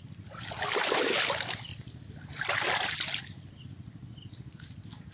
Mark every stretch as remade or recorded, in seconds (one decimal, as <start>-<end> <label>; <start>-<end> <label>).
0.0-5.1 recorded